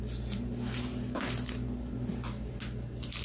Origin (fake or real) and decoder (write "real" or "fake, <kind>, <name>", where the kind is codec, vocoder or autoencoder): real